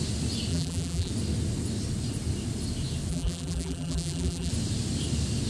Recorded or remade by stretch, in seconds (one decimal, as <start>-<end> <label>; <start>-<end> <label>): 0.0-0.5 recorded; 0.5-1.1 remade; 1.1-3.1 recorded; 3.1-4.5 remade; 4.5-5.5 recorded